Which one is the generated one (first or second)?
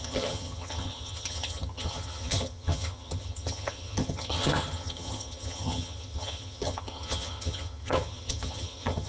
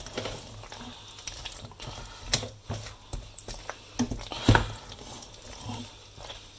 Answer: first